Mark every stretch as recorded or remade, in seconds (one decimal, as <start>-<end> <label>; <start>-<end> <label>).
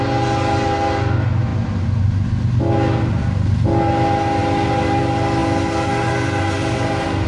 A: 0.0-7.3 recorded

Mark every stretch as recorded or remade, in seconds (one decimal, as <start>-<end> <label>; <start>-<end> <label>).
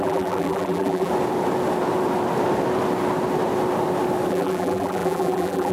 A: 0.0-1.1 remade; 1.1-4.3 recorded; 4.3-5.7 remade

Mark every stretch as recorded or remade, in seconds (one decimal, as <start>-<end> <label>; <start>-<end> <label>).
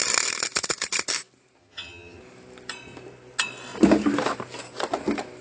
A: 0.0-1.6 recorded; 1.6-2.2 remade; 2.2-5.4 recorded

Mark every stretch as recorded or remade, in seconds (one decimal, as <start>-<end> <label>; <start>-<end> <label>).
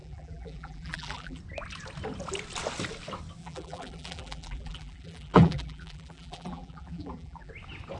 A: 0.0-1.4 remade; 1.4-3.4 recorded; 3.4-7.5 remade; 7.5-8.0 recorded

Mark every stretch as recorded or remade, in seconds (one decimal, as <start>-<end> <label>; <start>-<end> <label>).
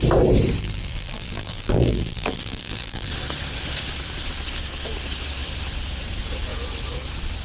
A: 0.0-0.6 recorded; 0.6-3.1 remade; 3.1-7.4 recorded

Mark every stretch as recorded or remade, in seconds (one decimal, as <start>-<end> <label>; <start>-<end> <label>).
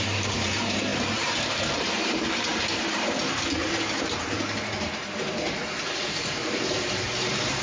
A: 0.0-7.6 remade